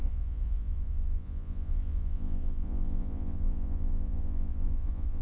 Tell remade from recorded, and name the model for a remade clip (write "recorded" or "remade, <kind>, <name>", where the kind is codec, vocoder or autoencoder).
remade, vocoder, Vocos